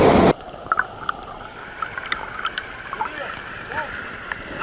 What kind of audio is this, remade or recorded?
recorded